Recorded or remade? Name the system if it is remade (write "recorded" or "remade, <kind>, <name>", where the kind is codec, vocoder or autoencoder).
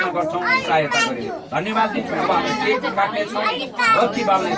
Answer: recorded